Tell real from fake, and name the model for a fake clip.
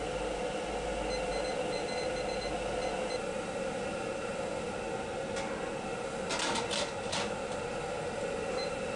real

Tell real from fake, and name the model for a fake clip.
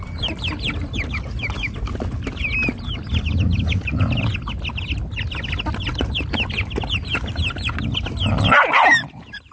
real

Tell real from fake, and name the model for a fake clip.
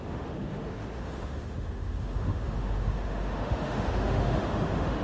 fake, autoencoder, DAC-VAE